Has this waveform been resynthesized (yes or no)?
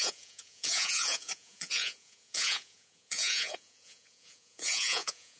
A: yes